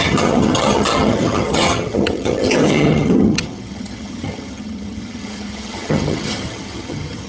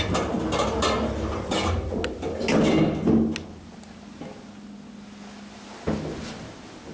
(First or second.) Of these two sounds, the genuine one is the second